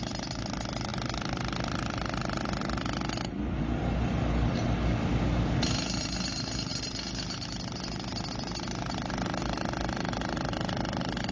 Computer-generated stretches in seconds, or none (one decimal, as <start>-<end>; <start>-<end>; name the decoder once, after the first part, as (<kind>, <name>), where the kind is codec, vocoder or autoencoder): none